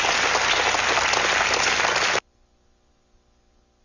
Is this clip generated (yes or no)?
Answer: no